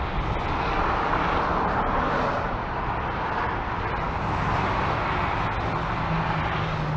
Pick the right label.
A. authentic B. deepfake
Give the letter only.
A